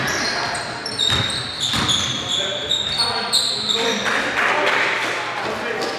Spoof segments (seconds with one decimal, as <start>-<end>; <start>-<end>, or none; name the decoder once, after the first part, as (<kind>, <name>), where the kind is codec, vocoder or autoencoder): none